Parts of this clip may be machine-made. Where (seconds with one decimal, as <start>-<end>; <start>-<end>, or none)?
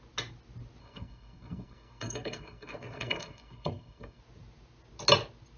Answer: 0.8-4.2